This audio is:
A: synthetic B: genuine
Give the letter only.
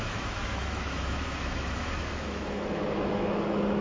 A